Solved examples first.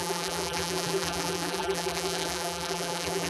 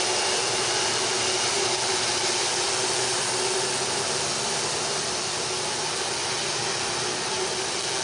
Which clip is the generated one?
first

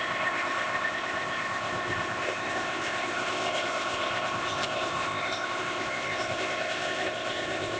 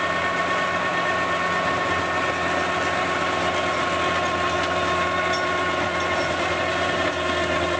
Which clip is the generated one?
first